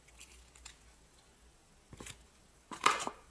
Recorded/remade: recorded